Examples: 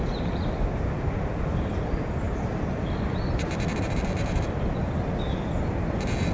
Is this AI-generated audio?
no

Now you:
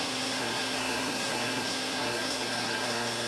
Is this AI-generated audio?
yes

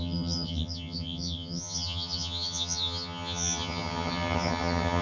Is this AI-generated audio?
yes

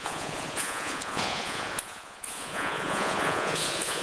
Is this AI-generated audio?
yes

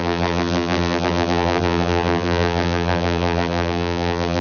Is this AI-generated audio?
yes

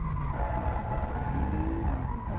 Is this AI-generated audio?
no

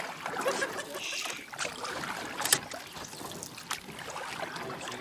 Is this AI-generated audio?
no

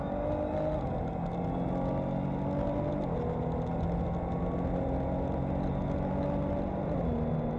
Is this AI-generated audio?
no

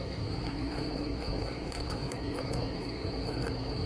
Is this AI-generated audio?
yes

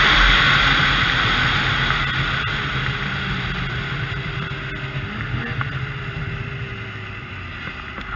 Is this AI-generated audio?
no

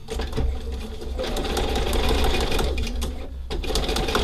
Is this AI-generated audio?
no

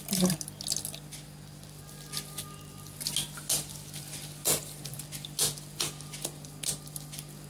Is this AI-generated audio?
no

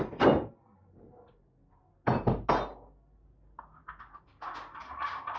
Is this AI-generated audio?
no